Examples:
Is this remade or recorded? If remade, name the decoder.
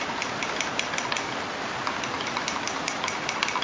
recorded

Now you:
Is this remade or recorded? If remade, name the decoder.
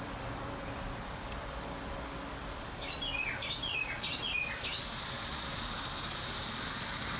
recorded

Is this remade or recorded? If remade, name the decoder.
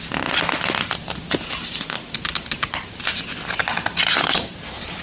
recorded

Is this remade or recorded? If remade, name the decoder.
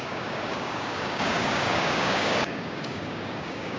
remade, codec, DAC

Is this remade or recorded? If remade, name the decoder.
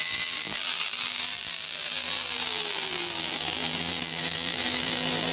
remade, vocoder, BigVGAN v2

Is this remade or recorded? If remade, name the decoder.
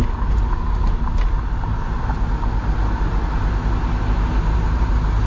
recorded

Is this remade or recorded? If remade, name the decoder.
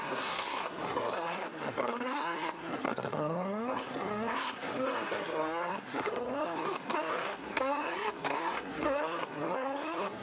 remade, codec, SNAC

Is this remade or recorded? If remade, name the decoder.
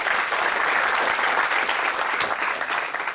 recorded